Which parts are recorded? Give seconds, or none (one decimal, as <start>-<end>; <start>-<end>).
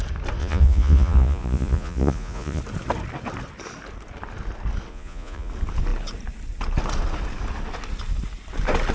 0.0-0.4; 2.6-4.9; 5.5-8.9